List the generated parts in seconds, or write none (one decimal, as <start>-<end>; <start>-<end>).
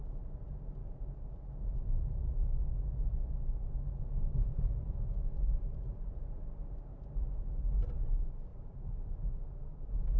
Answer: 0.0-0.8; 4.0-10.2